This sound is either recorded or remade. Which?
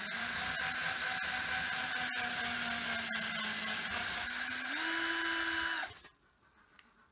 recorded